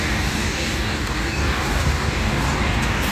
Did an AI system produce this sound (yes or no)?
yes